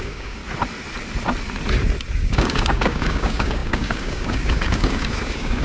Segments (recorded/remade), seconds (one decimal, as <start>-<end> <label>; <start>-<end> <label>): 0.0-0.4 remade; 0.4-2.2 recorded; 2.2-5.6 remade